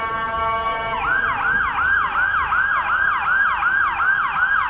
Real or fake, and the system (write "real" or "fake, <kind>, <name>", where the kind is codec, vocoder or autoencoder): real